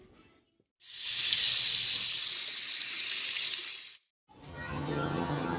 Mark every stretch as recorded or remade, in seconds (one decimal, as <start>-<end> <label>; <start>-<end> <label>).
0.0-4.5 recorded; 4.5-5.6 remade